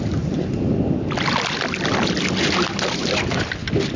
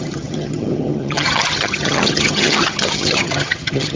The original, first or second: first